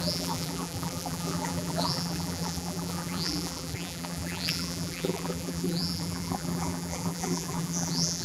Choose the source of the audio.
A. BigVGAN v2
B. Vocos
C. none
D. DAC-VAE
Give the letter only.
A